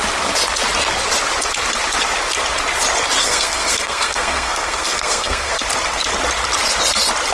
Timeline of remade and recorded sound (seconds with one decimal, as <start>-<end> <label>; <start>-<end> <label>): 0.0-3.2 recorded; 3.2-5.5 remade; 5.5-7.3 recorded